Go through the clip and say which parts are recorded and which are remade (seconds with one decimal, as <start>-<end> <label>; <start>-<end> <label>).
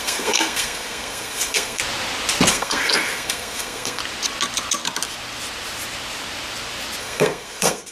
0.0-1.8 remade; 1.8-2.5 recorded; 2.5-4.0 remade; 4.0-7.0 recorded; 7.0-7.9 remade